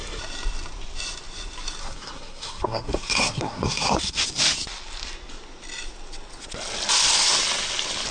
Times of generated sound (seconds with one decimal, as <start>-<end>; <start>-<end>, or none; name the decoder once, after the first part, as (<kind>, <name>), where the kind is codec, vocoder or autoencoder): 1.8-4.2 (codec, SNAC)